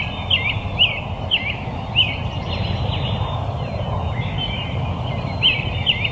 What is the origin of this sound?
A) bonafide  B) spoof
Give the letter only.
A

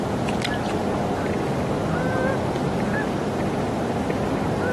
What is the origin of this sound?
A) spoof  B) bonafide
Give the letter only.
B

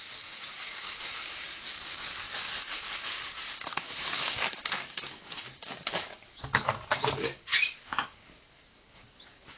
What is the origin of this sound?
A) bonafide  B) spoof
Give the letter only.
B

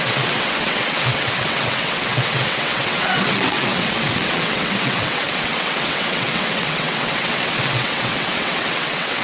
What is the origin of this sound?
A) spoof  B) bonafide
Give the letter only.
A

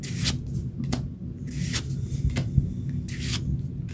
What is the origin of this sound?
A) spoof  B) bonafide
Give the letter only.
B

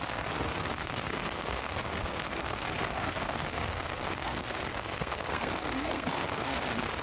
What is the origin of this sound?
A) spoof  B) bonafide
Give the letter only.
A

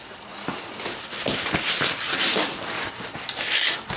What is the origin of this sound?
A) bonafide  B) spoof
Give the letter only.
A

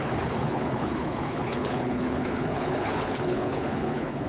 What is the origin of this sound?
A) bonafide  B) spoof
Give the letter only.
B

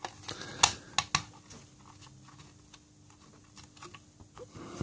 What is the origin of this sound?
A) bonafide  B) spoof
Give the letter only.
A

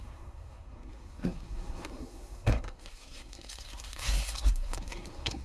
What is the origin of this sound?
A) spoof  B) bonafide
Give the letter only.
A